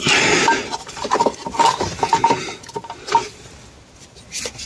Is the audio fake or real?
real